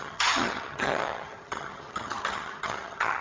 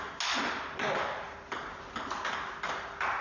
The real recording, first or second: second